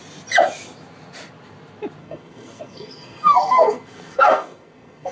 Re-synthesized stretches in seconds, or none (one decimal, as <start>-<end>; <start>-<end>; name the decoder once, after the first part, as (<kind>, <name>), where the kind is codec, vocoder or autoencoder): 2.0-5.1 (codec, SNAC)

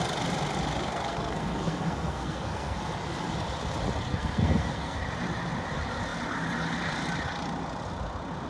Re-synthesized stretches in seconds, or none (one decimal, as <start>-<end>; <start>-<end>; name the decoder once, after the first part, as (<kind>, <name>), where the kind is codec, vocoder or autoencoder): 0.9-2.8 (codec, SNAC); 4.1-5.0

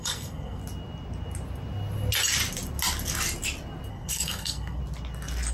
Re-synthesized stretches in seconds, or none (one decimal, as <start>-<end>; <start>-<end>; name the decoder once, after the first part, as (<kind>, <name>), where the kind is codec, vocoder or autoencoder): 0.0-0.6 (codec, SNAC); 3.9-4.8

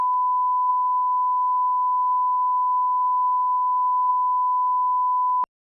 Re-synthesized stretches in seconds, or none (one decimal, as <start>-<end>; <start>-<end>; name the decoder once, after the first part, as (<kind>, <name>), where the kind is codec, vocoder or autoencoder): 0.7-4.1 (codec, SNAC)